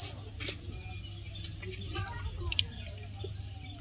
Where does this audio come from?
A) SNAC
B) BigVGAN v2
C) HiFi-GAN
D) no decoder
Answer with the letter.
D